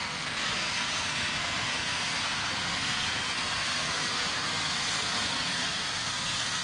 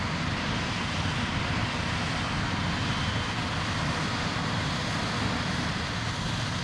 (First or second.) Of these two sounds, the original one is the second